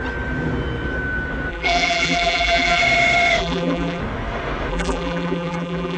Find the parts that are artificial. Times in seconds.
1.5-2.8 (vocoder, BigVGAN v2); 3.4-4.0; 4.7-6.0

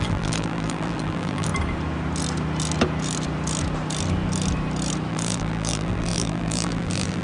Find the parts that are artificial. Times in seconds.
0.0-1.5 (vocoder, BigVGAN v2); 5.1-7.2

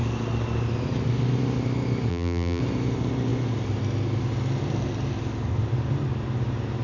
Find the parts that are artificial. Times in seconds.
2.1-2.6 (vocoder, BigVGAN v2)

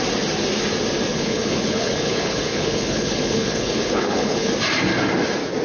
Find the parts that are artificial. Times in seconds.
1.1-4.5 (codec, HILCodec)

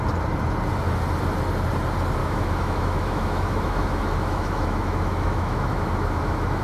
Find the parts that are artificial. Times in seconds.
2.2-6.6 (autoencoder, DAC-VAE)

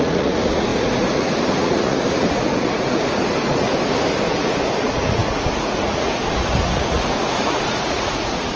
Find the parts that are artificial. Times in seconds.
0.0-3.7 (vocoder, Vocos); 4.8-8.6